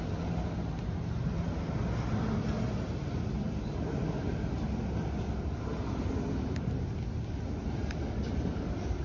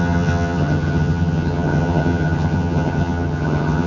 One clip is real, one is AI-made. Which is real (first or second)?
first